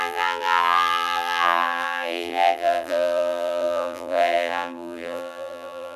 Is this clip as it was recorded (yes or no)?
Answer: no